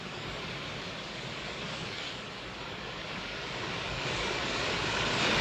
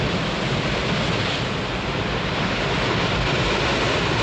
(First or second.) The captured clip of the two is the second